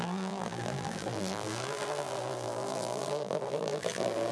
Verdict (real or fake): fake